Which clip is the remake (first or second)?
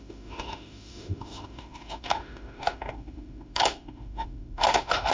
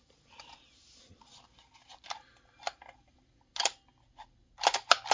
first